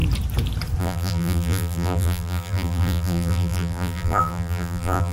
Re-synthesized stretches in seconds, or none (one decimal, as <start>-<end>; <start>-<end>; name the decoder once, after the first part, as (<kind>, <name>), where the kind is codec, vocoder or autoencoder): 0.8-5.1 (vocoder, BigVGAN v2)

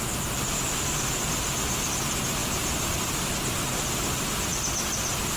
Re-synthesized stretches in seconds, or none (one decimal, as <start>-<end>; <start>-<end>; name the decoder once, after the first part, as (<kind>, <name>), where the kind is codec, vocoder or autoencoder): 2.4-3.0 (vocoder, BigVGAN v2)